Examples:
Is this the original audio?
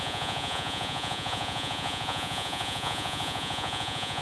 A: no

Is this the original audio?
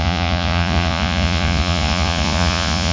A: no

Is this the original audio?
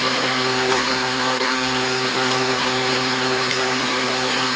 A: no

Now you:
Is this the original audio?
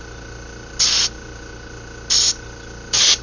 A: yes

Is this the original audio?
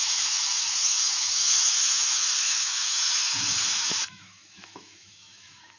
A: no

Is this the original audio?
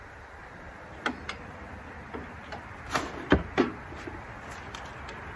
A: yes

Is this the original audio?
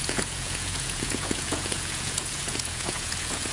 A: no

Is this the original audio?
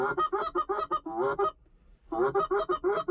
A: yes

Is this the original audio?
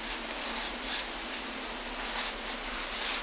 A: yes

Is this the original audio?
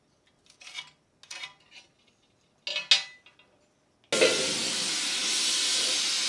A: yes